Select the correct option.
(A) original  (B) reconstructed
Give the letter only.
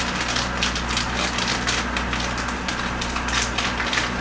A